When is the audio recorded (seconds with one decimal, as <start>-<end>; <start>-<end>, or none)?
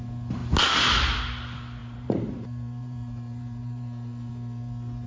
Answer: 0.0-1.8; 4.3-5.1